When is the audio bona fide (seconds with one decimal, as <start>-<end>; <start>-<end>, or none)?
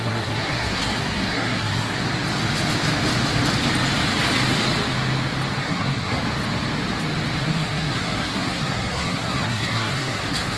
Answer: 2.0-5.6; 6.2-7.4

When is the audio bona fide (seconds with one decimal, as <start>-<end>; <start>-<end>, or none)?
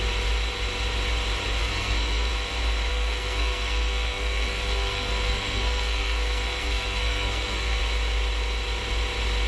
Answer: 0.0-1.6; 2.3-2.9; 7.8-9.5